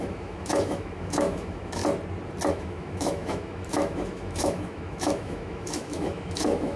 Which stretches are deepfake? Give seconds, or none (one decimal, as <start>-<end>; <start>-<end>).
0.0-1.8; 2.5-6.8